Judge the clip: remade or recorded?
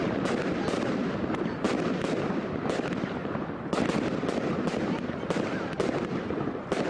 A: recorded